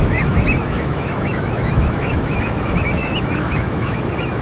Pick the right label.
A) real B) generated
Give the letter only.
B